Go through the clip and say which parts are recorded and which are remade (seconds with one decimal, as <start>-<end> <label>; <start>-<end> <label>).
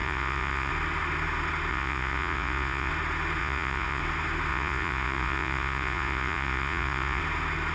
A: 0.0-0.7 remade; 0.7-1.7 recorded; 1.7-2.9 remade; 2.9-3.4 recorded; 3.4-4.0 remade; 4.0-4.5 recorded; 4.5-7.2 remade; 7.2-7.7 recorded